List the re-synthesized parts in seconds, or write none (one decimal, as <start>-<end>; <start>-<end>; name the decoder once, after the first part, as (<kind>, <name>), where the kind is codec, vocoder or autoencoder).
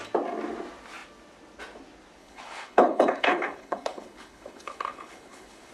2.2-5.7 (codec, HILCodec)